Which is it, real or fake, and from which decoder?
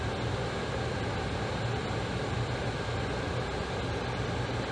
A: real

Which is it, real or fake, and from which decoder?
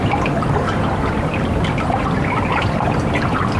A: fake, vocoder, BigVGAN v2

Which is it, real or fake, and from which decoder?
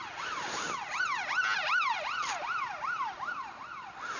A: real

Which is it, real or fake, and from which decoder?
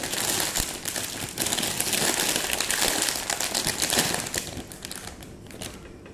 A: real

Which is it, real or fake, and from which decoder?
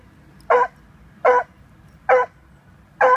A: real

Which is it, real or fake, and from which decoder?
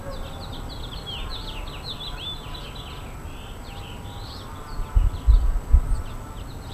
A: real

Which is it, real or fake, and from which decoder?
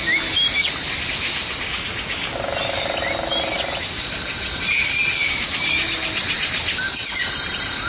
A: real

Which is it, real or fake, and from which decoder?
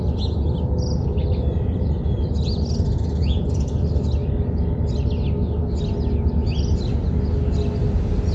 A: real